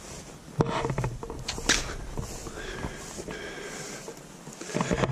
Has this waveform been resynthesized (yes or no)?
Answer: no